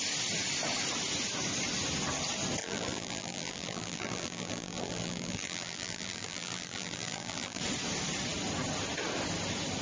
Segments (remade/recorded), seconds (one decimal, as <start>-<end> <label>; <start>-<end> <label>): 0.0-2.6 recorded; 2.6-7.6 remade; 7.6-9.8 recorded